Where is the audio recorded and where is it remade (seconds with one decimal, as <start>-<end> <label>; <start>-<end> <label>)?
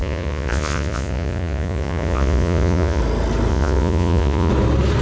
0.0-3.0 remade; 3.0-3.5 recorded; 3.5-4.5 remade; 4.5-5.0 recorded